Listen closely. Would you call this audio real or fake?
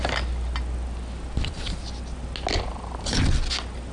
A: real